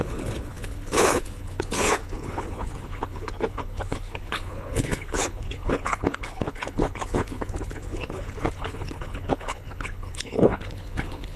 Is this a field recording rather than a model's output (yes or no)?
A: no